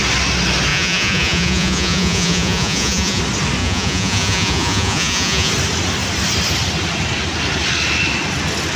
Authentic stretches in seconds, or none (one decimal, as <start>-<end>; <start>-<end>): 0.0-0.7; 3.2-3.6; 5.5-8.8